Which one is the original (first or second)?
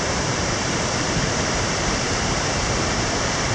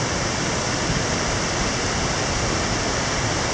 second